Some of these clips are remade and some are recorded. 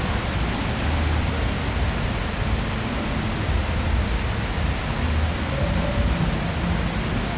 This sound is recorded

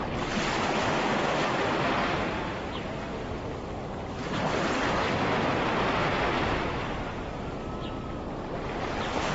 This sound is recorded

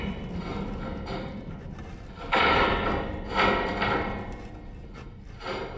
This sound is recorded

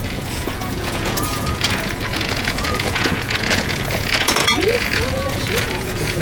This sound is remade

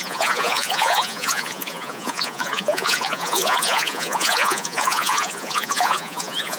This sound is remade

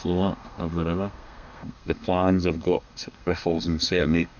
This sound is remade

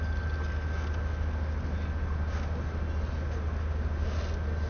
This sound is recorded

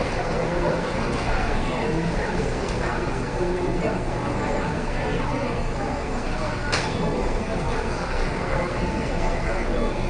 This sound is remade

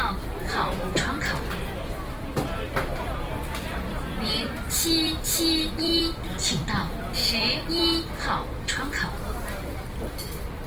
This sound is remade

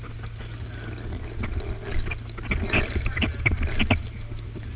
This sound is recorded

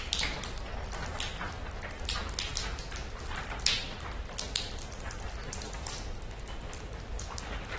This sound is recorded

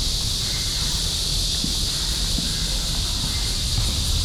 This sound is recorded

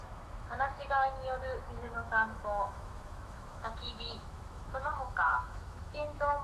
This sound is remade